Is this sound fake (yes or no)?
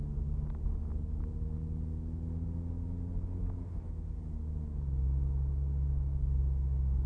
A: no